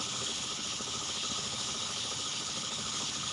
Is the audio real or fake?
fake